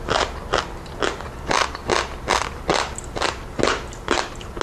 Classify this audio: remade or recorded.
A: recorded